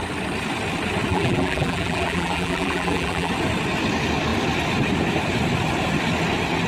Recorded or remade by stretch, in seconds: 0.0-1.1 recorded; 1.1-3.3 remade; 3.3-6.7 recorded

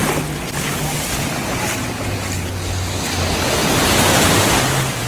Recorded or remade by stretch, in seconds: 0.0-3.6 recorded; 3.6-4.4 remade; 4.4-5.1 recorded

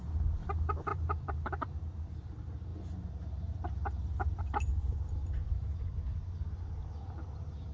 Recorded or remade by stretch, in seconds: 0.0-0.9 recorded; 0.9-2.1 remade; 2.1-7.7 recorded

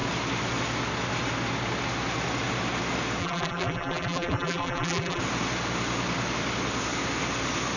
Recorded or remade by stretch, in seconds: 0.0-3.2 recorded; 3.2-5.2 remade; 5.2-7.8 recorded

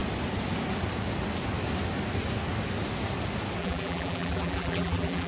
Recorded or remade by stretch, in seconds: 0.0-3.6 recorded; 3.6-5.3 remade

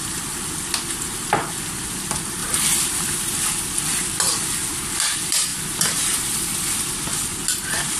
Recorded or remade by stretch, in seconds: 0.0-8.0 remade